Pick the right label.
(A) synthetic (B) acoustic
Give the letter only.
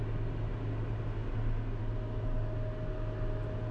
B